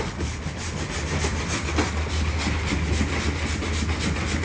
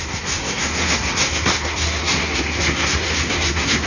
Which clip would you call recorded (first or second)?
first